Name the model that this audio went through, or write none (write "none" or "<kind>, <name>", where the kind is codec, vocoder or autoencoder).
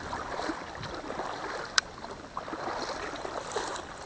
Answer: vocoder, BigVGAN v2